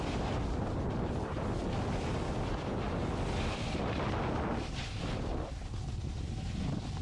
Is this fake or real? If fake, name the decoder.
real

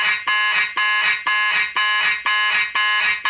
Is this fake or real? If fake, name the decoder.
real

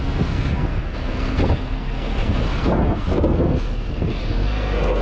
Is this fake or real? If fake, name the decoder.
fake, codec, SNAC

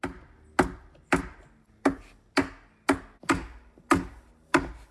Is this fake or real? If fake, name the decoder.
real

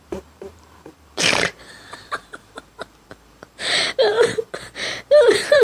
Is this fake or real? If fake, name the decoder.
fake, vocoder, BigVGAN v2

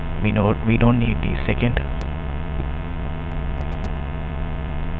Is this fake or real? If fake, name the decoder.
fake, vocoder, WaveNeXt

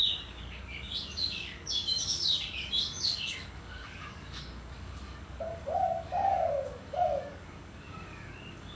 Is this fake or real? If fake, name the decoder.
fake, codec, DAC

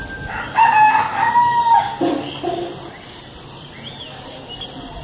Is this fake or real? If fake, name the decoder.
real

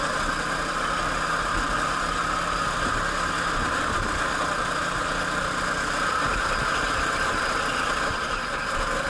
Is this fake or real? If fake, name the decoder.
real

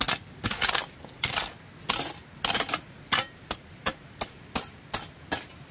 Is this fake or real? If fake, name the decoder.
real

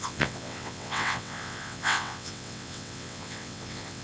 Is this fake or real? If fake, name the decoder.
fake, vocoder, WaveNeXt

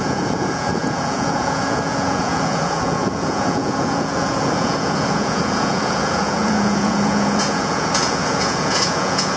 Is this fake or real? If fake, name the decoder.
fake, vocoder, Vocos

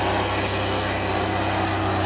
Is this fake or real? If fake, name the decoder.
real